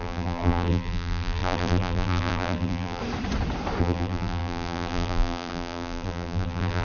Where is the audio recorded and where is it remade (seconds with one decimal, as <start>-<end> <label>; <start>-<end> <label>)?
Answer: 0.0-3.0 remade; 3.0-3.8 recorded; 3.8-6.8 remade